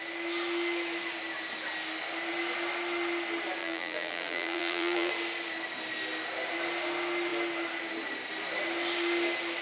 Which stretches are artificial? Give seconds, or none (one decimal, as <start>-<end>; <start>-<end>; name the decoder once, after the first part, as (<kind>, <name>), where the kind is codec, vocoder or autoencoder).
3.6-5.1 (vocoder, BigVGAN v2)